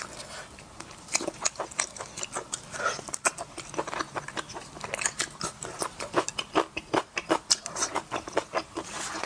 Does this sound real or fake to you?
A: real